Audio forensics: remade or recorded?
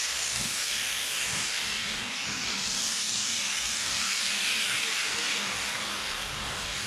remade